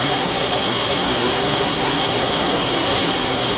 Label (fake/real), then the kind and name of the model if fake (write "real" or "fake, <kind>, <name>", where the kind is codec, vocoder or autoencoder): fake, codec, SNAC